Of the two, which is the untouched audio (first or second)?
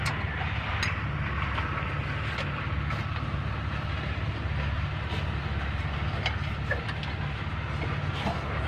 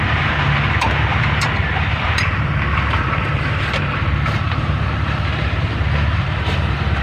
first